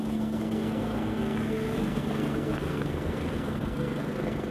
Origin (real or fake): fake